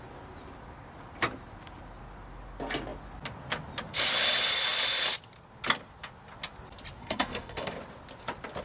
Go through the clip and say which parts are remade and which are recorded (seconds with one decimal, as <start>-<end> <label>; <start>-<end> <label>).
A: 0.0-7.0 recorded; 7.0-7.7 remade; 7.7-8.6 recorded